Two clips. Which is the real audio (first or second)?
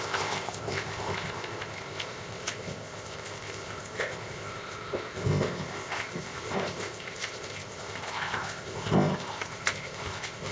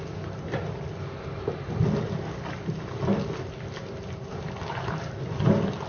second